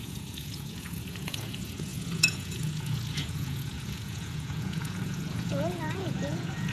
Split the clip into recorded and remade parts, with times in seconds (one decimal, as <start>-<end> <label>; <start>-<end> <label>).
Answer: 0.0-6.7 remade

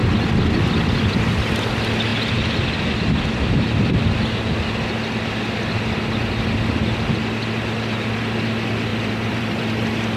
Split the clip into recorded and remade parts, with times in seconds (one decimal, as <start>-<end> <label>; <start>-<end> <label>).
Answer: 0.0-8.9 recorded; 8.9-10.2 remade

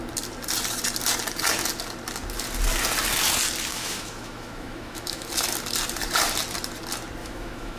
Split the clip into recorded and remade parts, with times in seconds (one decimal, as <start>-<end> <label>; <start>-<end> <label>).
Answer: 0.0-3.7 recorded; 3.7-5.3 remade; 5.3-7.2 recorded; 7.2-7.8 remade